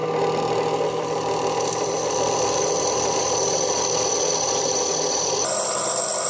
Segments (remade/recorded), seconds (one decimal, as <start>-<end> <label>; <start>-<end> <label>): 0.0-6.3 recorded